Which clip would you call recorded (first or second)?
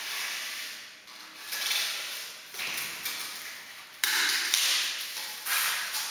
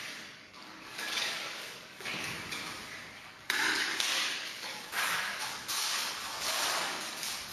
first